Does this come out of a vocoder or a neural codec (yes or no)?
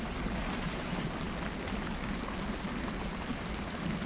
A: no